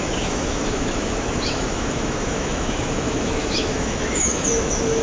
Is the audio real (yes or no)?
no